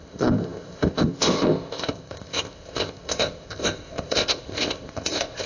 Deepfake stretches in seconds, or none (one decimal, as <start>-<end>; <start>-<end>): 0.0-5.5

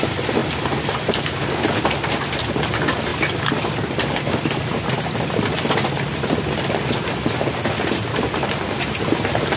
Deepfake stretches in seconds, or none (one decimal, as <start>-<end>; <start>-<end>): none

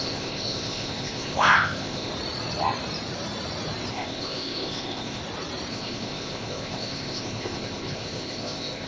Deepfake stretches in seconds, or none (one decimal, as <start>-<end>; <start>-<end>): 0.0-2.1; 3.9-5.2; 5.7-8.9

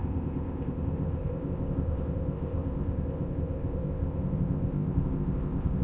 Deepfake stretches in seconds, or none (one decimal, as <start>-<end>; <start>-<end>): 0.0-5.8